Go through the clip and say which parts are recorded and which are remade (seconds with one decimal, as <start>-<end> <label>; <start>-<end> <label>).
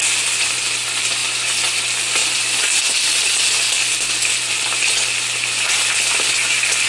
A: 0.0-6.9 recorded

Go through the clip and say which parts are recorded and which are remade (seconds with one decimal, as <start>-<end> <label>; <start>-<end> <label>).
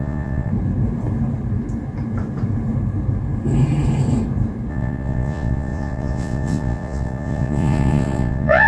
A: 0.0-0.5 remade; 0.5-4.7 recorded; 4.7-8.7 remade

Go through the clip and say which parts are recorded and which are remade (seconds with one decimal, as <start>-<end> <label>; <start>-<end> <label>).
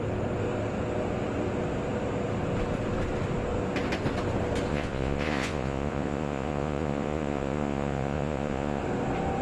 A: 0.0-4.7 recorded; 4.7-8.8 remade; 8.8-9.4 recorded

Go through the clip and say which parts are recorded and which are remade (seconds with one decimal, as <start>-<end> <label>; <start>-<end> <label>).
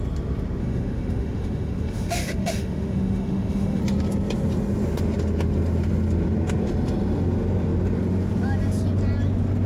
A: 0.0-0.6 recorded; 0.6-3.8 remade; 3.8-9.7 recorded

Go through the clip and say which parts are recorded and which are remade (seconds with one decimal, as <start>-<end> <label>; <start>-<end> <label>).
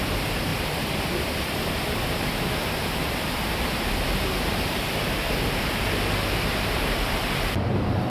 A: 0.0-8.1 remade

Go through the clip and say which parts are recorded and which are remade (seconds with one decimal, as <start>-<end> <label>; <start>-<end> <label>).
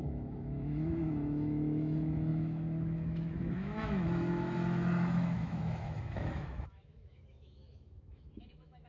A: 0.0-8.9 remade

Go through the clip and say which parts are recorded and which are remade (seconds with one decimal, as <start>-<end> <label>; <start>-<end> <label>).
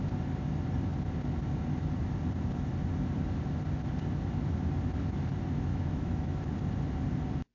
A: 0.0-5.7 recorded; 5.7-6.5 remade; 6.5-7.5 recorded